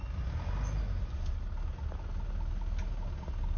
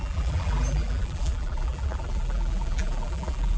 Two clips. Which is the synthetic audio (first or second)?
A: second